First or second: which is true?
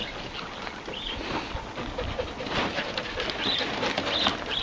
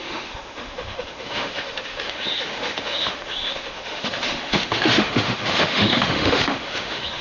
first